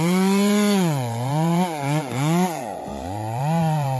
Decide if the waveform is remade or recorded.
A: remade